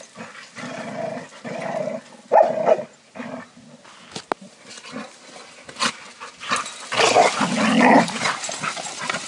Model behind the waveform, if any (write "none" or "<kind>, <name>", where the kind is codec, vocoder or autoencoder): none